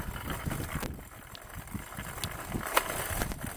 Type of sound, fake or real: real